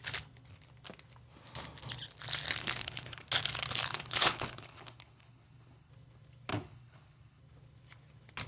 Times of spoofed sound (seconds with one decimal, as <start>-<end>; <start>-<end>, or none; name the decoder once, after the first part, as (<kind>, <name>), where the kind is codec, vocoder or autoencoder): 2.6-3.3 (codec, HILCodec); 3.9-5.9; 6.5-7.4